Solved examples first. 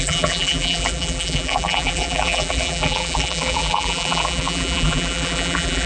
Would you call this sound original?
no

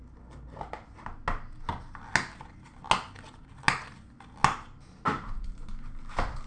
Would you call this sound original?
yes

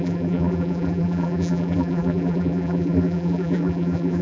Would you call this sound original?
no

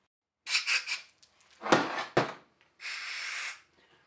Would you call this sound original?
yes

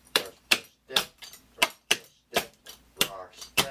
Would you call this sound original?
no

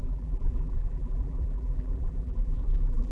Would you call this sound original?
no